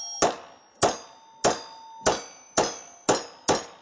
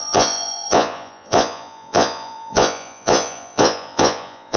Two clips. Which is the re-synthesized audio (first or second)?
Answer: second